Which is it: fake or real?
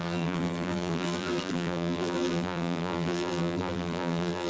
fake